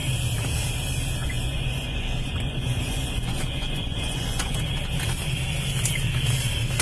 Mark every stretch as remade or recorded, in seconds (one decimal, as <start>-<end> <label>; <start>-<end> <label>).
0.0-1.2 recorded; 1.2-4.6 remade; 4.6-6.8 recorded